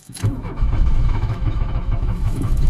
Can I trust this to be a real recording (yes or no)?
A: no